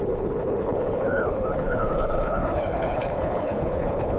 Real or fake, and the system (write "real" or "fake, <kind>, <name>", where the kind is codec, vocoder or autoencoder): fake, codec, HILCodec